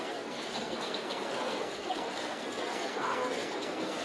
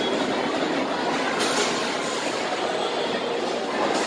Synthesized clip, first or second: first